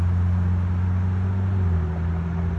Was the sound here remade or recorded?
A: recorded